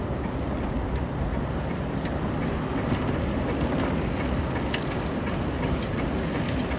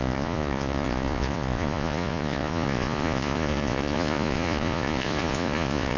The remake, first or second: second